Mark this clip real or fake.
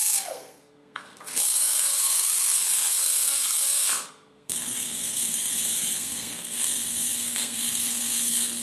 fake